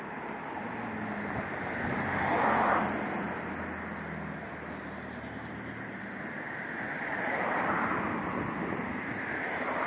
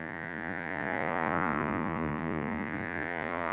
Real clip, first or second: first